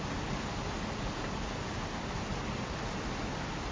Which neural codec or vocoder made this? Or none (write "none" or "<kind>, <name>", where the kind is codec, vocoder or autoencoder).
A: none